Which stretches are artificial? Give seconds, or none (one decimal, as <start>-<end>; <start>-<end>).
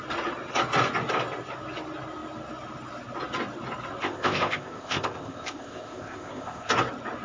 4.0-6.7